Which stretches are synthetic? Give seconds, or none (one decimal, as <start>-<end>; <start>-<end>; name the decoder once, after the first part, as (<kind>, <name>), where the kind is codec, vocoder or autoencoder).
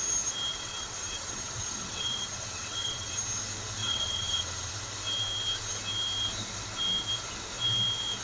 0.5-3.2 (vocoder, WaveNeXt); 3.8-4.7